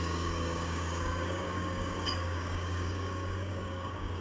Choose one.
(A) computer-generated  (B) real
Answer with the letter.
A